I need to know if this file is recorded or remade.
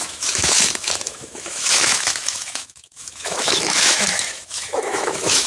remade